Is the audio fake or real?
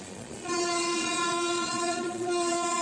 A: fake